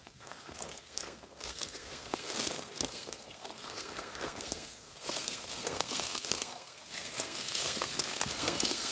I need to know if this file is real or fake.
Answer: fake